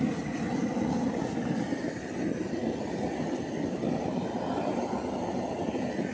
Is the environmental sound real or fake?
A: real